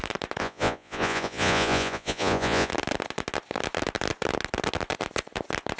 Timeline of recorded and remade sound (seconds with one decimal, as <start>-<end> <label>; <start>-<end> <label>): 0.0-0.4 recorded; 0.4-2.7 remade; 2.7-5.8 recorded